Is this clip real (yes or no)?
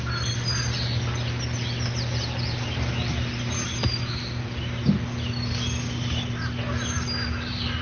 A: yes